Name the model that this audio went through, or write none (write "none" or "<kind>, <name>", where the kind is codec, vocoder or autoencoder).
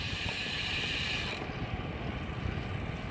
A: none